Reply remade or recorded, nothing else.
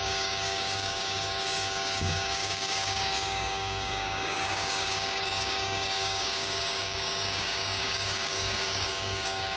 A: remade